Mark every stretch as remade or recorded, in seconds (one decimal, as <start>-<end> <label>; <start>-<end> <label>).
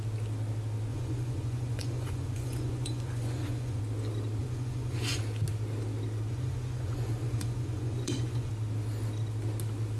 0.0-0.9 recorded; 0.9-3.8 remade; 3.8-4.4 recorded; 4.4-5.2 remade; 5.2-6.3 recorded; 6.3-8.5 remade; 8.5-10.0 recorded